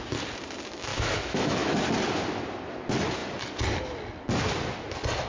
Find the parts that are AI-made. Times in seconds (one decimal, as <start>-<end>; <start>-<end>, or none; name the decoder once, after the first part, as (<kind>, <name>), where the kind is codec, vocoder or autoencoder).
0.9-1.8 (autoencoder, DAC-VAE)